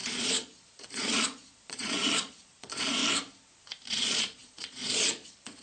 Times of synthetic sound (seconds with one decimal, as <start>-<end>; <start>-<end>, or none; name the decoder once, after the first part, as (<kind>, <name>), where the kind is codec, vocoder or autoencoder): 0.0-3.0 (vocoder, Vocos); 3.9-5.6